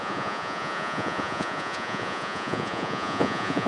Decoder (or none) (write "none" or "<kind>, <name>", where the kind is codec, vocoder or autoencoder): vocoder, Vocos